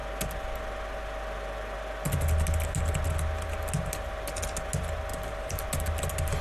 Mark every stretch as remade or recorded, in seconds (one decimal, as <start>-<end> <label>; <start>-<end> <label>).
0.0-5.1 recorded; 5.1-5.6 remade; 5.6-6.4 recorded